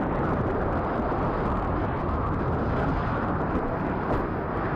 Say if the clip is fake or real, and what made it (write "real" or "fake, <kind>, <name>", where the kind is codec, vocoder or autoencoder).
real